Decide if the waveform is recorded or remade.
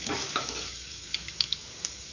remade